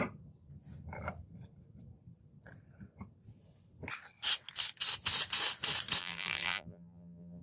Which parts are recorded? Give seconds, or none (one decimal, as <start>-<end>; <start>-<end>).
0.0-6.0